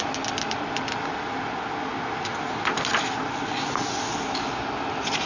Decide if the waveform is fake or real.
real